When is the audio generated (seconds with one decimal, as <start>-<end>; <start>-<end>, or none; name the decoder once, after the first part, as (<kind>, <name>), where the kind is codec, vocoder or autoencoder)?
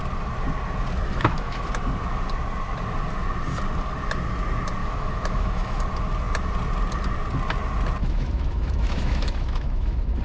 1.1-1.7 (autoencoder, DAC-VAE); 4.8-5.8; 8.0-10.2